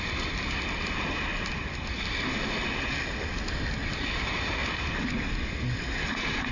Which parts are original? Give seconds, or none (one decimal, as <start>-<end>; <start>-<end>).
0.0-4.6; 5.2-6.5